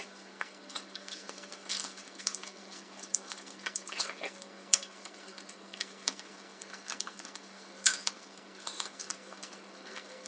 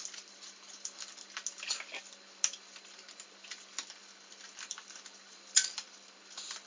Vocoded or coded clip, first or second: first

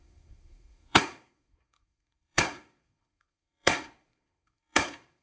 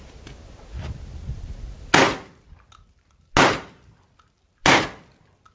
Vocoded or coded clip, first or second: first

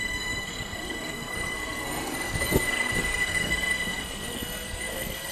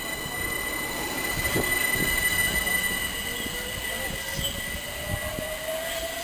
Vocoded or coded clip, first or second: first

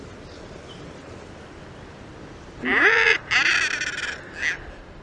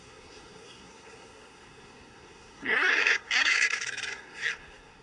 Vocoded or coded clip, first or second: second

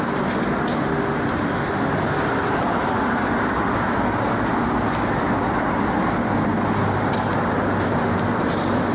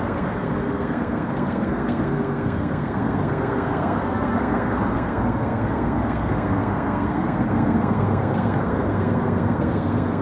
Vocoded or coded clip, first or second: second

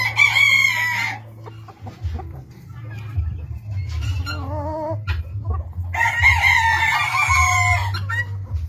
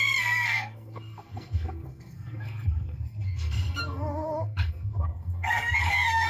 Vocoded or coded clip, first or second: second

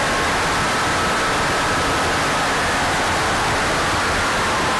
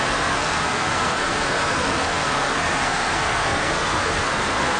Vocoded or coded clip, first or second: second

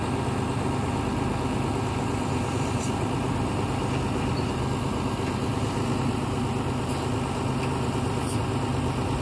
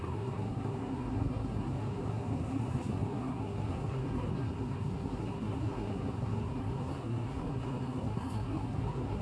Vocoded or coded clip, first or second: second